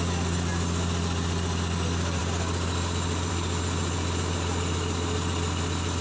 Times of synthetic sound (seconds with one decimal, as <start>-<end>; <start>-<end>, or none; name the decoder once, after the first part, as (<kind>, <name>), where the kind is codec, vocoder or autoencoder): none